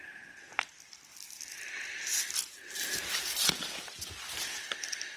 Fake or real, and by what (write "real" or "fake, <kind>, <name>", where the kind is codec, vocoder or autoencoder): real